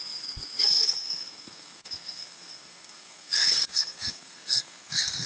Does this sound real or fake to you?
fake